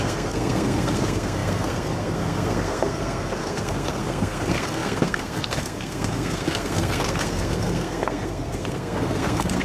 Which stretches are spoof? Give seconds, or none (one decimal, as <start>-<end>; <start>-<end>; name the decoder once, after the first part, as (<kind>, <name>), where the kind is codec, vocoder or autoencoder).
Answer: 0.0-9.6 (codec, SNAC)